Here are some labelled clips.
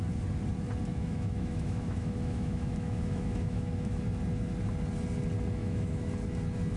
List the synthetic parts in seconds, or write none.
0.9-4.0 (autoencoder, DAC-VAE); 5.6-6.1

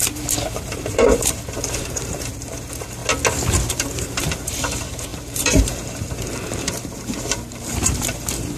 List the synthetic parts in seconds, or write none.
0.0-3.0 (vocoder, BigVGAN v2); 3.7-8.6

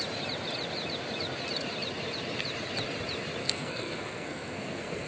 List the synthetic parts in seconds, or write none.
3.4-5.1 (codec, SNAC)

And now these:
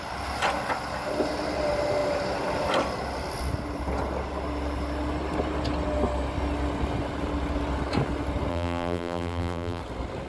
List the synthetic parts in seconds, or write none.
8.5-9.8 (vocoder, BigVGAN v2)